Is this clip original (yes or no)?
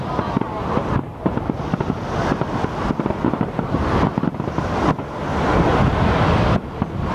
yes